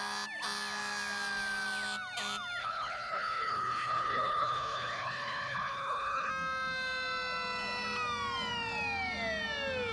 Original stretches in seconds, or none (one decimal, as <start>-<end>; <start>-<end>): 0.0-2.6; 6.3-9.9